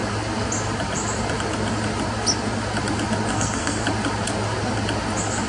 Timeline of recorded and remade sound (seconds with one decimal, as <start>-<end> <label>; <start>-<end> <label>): 0.0-3.3 recorded; 3.3-3.8 remade; 3.8-5.5 recorded